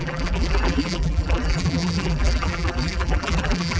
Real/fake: fake